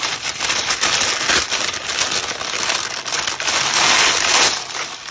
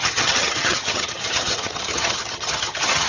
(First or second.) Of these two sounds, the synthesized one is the second